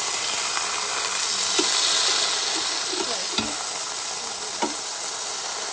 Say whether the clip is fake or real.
real